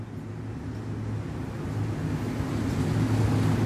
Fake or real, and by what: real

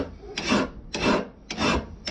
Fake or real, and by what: real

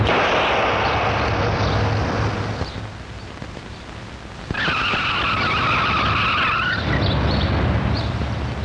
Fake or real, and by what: real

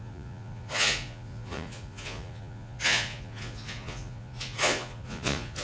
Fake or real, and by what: fake, vocoder, Vocos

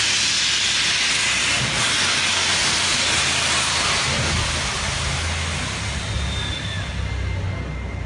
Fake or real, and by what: real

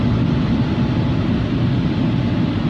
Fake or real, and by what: real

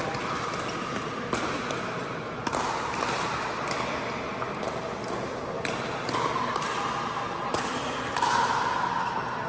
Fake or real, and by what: real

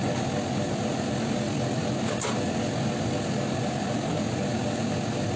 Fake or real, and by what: real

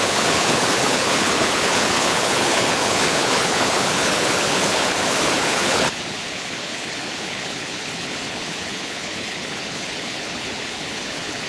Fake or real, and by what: fake, codec, HILCodec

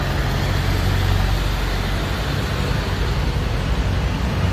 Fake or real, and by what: real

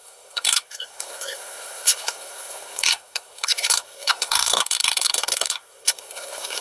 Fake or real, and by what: fake, codec, SNAC